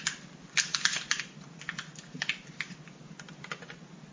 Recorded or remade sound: recorded